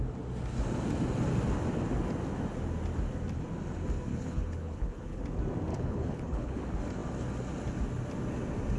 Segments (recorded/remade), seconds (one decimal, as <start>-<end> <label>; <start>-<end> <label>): 0.0-4.1 recorded; 4.1-5.2 remade; 5.2-5.7 recorded; 5.7-6.6 remade; 6.6-8.8 recorded